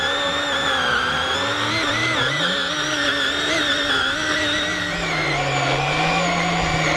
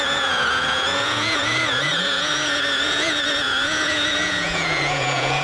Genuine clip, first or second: first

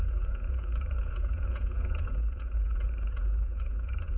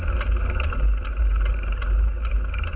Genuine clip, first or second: second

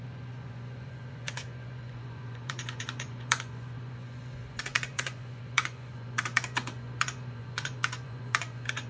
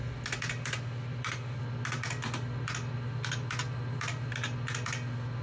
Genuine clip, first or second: second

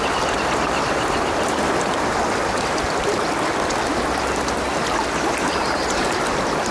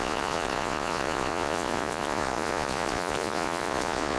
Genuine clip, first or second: first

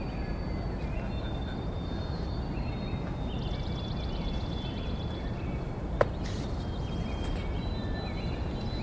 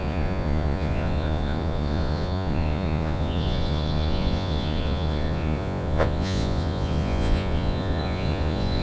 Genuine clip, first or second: first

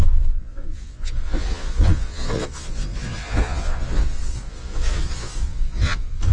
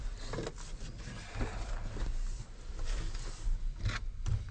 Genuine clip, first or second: second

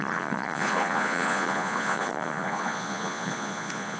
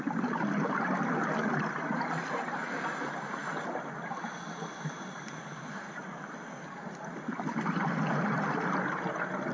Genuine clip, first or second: second